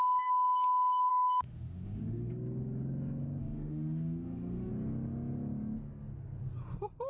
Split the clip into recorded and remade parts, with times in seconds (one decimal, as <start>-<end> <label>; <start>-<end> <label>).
0.0-1.1 recorded; 1.1-2.3 remade; 2.3-3.4 recorded; 3.4-4.7 remade; 4.7-7.1 recorded